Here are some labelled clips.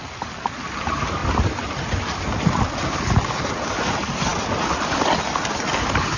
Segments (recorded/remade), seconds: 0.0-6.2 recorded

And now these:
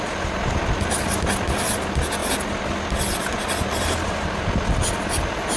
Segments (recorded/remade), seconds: 0.0-5.6 recorded

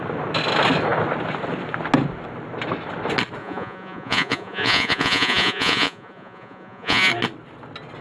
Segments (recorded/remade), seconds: 0.0-3.4 recorded; 3.4-7.1 remade; 7.1-8.0 recorded